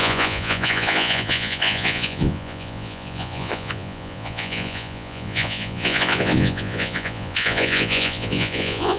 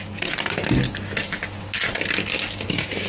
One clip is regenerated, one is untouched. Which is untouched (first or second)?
second